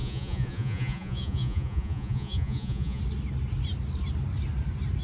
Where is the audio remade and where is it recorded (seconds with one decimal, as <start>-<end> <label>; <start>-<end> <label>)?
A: 0.0-3.0 remade; 3.0-5.0 recorded